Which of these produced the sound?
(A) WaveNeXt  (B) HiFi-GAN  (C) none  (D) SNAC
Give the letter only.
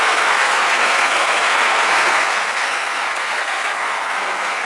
D